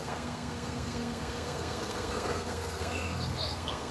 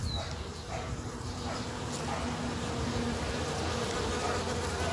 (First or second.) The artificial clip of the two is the first